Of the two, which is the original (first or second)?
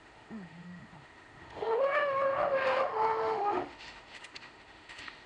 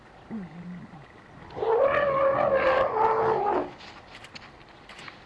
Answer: second